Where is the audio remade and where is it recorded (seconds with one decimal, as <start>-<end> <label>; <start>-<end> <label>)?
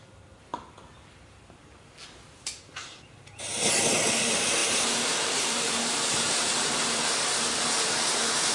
0.0-0.5 remade; 0.5-2.6 recorded; 2.6-8.5 remade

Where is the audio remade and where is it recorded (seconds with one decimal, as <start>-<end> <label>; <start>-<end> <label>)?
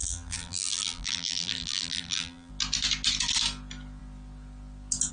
0.0-2.5 remade; 2.5-5.1 recorded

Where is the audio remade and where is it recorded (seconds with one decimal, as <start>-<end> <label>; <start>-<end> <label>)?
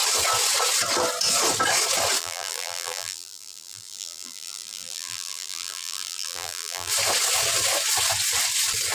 0.0-2.2 recorded; 2.2-6.9 remade; 6.9-8.9 recorded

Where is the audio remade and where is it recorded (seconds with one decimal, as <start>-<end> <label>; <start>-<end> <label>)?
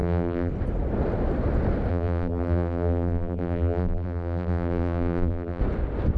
0.0-0.5 remade; 0.5-1.9 recorded; 1.9-5.6 remade; 5.6-6.2 recorded